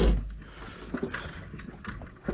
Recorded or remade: recorded